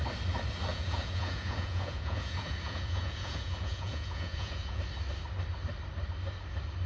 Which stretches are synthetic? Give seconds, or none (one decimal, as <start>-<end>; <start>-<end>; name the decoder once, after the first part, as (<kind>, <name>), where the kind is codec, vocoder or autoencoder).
0.7-4.8 (vocoder, Vocos)